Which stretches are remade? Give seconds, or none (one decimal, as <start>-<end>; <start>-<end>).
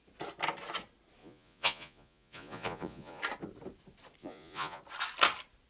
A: 1.2-3.2; 4.2-4.8